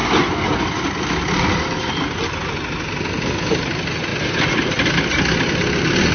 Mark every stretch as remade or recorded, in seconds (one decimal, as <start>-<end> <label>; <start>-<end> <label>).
0.0-6.1 recorded